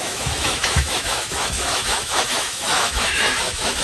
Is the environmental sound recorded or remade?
remade